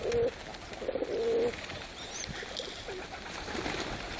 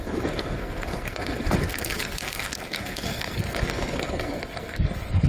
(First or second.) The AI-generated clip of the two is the second